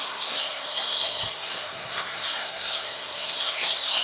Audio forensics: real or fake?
fake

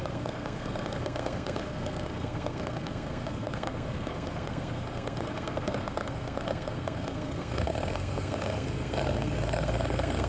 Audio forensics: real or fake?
fake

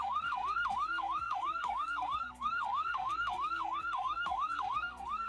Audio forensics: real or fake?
fake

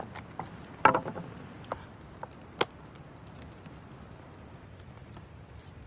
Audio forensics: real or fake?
real